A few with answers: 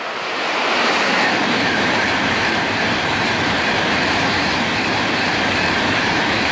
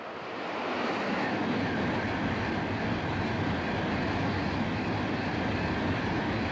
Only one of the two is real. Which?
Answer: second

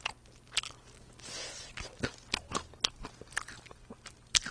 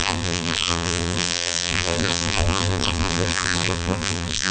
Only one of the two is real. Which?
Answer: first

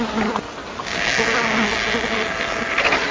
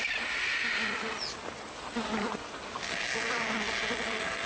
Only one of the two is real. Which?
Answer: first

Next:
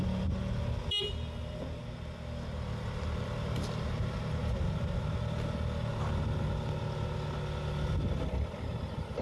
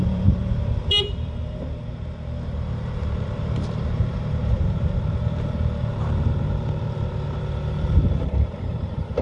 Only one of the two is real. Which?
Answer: first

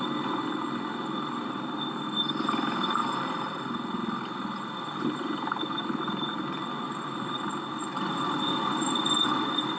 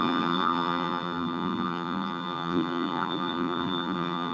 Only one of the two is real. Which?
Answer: first